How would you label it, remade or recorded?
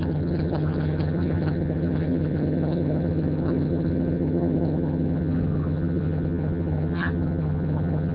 remade